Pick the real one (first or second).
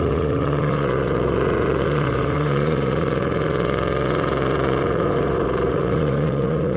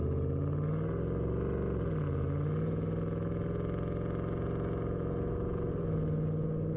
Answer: second